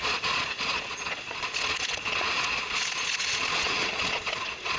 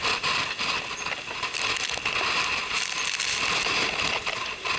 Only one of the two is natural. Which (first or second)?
second